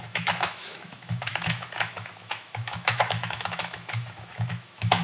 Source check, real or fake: fake